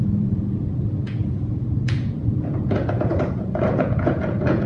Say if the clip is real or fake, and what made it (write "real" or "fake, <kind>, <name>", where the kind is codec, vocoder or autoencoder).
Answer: fake, vocoder, Vocos